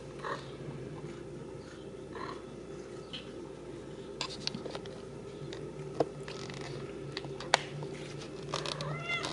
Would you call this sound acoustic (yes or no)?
yes